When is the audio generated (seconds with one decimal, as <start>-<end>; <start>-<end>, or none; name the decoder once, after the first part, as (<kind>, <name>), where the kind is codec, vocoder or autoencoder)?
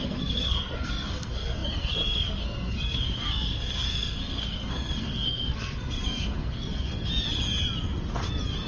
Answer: 0.0-7.1 (codec, SNAC)